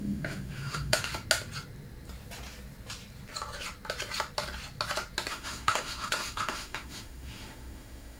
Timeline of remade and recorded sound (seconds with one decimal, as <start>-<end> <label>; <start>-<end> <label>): 0.0-1.1 remade; 1.1-5.3 recorded; 5.3-8.2 remade